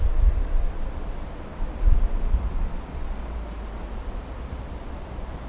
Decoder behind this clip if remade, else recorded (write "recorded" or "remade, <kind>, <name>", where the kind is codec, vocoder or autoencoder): recorded